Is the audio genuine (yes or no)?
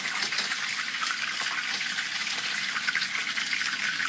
yes